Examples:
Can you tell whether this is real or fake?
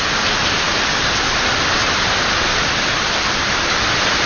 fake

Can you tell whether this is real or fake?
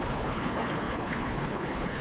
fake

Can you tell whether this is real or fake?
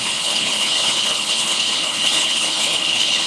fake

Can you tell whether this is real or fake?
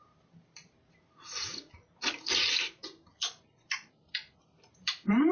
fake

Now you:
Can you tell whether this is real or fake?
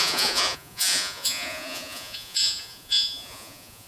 fake